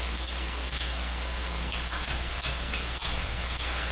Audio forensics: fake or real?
fake